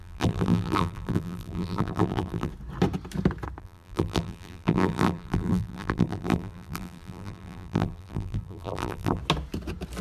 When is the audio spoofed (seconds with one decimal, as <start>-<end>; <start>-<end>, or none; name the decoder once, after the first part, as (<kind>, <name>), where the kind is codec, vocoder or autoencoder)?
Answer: 0.0-2.5 (vocoder, BigVGAN v2); 3.6-9.2